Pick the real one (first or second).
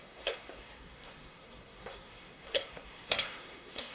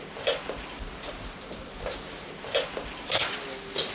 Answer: second